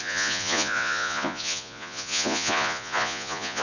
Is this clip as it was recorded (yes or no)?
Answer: no